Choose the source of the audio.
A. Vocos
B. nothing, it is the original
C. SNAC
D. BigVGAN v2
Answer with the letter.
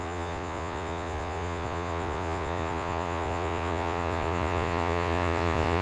A